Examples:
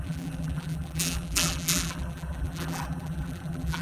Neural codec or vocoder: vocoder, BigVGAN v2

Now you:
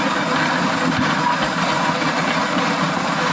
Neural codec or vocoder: none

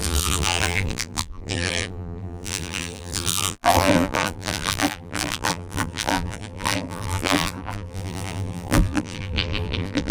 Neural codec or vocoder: vocoder, BigVGAN v2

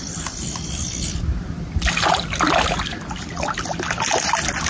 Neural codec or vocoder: none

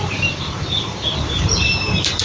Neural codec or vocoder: vocoder, BigVGAN v2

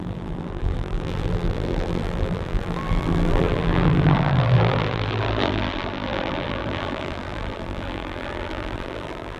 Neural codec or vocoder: vocoder, BigVGAN v2